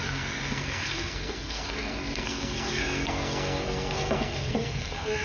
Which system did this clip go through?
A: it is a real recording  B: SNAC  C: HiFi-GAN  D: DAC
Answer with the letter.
B